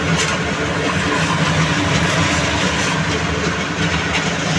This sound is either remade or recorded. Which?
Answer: recorded